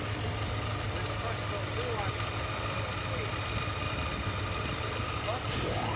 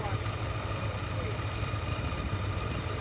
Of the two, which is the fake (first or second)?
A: second